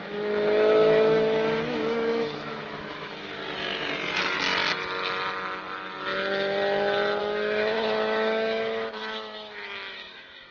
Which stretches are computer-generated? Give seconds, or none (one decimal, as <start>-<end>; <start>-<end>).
0.0-3.4; 7.2-10.5